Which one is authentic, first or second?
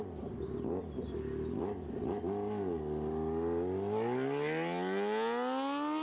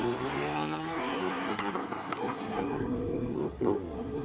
first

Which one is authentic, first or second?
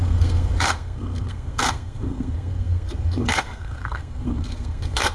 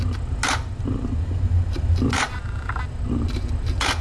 second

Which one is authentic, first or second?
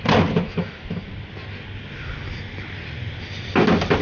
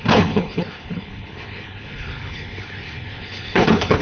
first